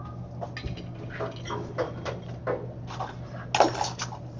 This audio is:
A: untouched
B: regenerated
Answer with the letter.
A